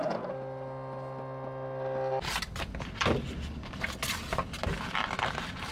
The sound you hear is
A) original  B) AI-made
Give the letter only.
A